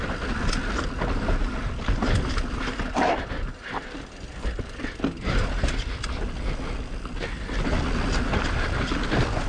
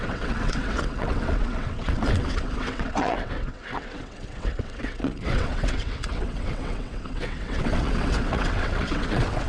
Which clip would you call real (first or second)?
first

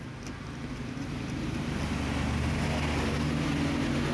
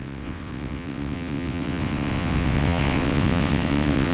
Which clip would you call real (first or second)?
first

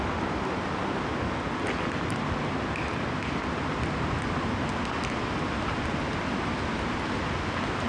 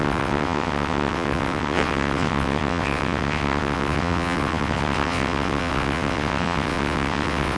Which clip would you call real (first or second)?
first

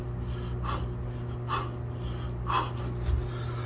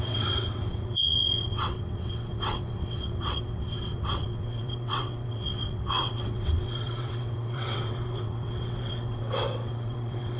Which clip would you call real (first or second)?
first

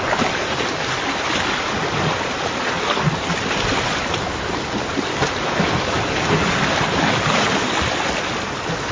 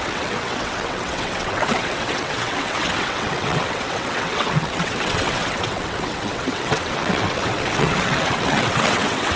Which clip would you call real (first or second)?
first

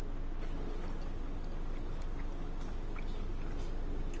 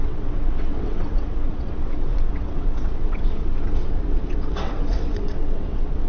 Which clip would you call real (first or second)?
first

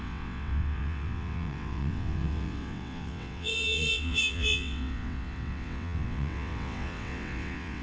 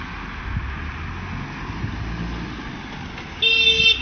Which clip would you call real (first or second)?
second